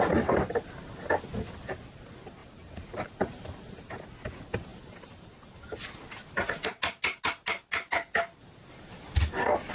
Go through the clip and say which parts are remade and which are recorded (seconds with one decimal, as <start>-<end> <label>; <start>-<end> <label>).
0.0-2.4 recorded; 2.4-4.0 remade; 4.0-9.7 recorded